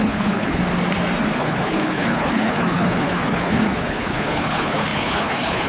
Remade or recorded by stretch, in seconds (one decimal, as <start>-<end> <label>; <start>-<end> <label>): 0.0-0.6 remade; 0.6-1.4 recorded; 1.4-5.7 remade